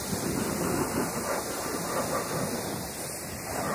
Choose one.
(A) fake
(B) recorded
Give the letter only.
B